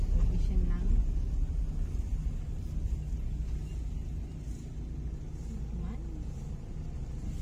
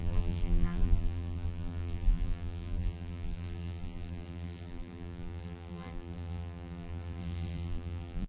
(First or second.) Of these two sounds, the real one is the first